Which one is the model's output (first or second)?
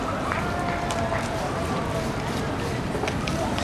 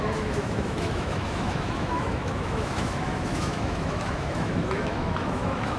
second